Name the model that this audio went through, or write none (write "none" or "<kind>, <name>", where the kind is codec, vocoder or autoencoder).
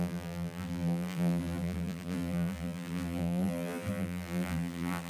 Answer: vocoder, BigVGAN v2